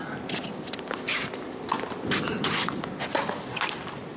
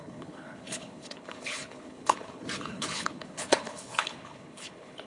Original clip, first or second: first